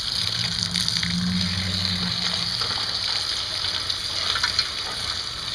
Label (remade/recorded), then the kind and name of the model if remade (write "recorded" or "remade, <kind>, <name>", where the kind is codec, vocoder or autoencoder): recorded